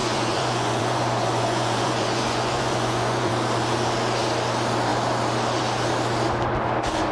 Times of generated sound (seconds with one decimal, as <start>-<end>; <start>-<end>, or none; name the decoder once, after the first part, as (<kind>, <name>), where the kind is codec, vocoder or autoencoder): 0.0-3.3 (vocoder, Vocos)